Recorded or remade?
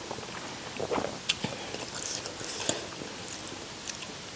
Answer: recorded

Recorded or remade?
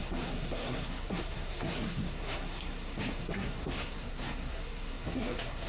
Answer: remade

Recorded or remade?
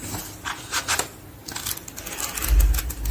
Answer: recorded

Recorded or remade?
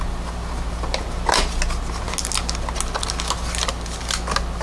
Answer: recorded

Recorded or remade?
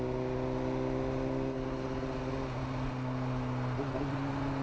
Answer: recorded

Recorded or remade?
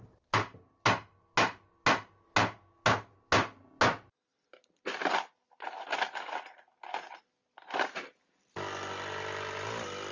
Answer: recorded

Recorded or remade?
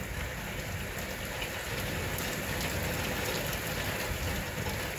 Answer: recorded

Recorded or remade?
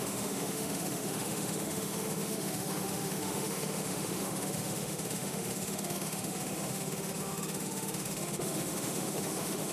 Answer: remade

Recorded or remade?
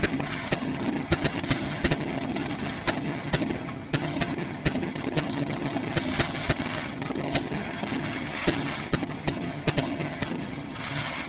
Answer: remade